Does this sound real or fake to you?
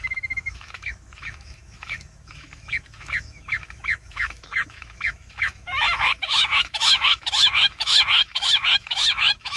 fake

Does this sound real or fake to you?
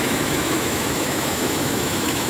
fake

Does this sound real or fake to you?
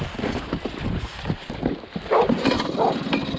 real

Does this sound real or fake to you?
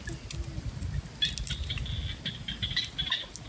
real